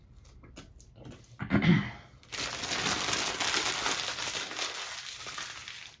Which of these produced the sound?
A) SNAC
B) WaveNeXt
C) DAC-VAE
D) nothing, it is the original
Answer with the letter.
D